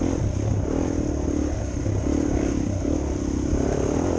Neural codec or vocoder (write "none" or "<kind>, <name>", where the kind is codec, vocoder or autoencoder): none